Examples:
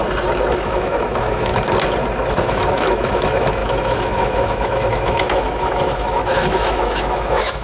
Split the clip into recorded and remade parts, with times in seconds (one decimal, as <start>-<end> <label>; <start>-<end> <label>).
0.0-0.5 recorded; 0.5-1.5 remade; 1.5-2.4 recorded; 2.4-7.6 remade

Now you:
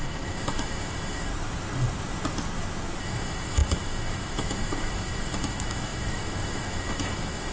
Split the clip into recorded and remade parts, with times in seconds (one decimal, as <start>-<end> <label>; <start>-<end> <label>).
0.0-1.3 remade; 1.3-3.0 recorded; 3.0-7.5 remade

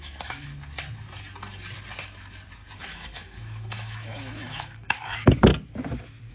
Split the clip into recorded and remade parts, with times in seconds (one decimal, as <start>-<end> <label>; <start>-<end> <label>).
0.0-0.5 remade; 0.5-2.8 recorded; 2.8-5.5 remade; 5.5-6.3 recorded

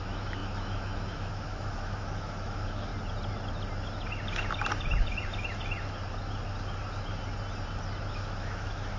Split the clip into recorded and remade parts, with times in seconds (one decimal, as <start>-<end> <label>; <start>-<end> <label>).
0.0-2.9 remade; 2.9-8.1 recorded; 8.1-9.0 remade

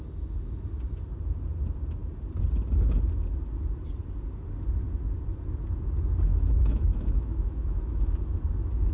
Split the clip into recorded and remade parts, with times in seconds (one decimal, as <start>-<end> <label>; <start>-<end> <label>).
0.0-6.3 recorded; 6.3-8.2 remade; 8.2-8.9 recorded

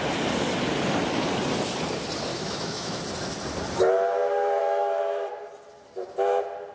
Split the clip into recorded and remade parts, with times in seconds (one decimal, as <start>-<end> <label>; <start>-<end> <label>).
0.0-2.3 recorded; 2.3-3.0 remade; 3.0-4.6 recorded; 4.6-5.3 remade; 5.3-6.7 recorded